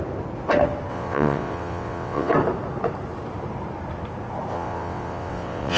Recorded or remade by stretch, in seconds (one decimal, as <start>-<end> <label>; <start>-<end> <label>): 0.0-0.9 recorded; 0.9-2.3 remade; 2.3-4.5 recorded; 4.5-5.8 remade